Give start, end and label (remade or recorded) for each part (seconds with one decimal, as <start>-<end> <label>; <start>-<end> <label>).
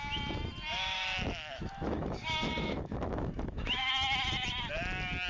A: 0.0-0.7 recorded; 0.7-3.9 remade; 3.9-5.3 recorded